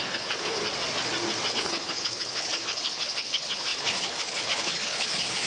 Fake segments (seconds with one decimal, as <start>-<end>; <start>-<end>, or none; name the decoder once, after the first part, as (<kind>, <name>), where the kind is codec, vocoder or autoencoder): 0.0-0.6 (codec, HILCodec); 1.5-5.5